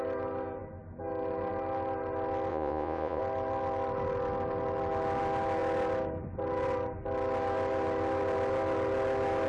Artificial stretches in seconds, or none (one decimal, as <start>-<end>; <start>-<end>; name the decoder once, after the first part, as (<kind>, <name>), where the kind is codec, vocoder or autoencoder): 2.5-3.2 (vocoder, Vocos)